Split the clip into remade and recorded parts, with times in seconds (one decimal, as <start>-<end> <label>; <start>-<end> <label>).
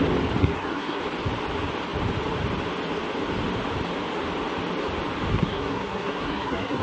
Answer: 0.0-0.4 recorded; 0.4-1.0 remade; 1.0-5.3 recorded; 5.3-6.8 remade